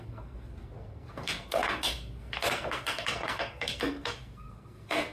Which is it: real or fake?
fake